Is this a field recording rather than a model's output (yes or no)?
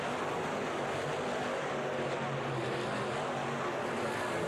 yes